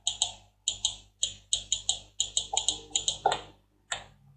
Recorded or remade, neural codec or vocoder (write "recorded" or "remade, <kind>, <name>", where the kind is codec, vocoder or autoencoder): recorded